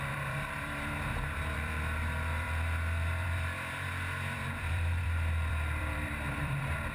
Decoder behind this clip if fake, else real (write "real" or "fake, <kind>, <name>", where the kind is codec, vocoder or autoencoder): fake, vocoder, BigVGAN v2